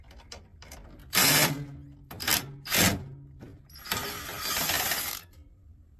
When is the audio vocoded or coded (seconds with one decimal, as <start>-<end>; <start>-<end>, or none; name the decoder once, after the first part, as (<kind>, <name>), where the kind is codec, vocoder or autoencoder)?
none